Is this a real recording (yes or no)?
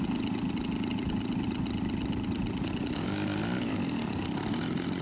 yes